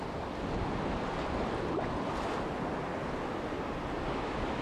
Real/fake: real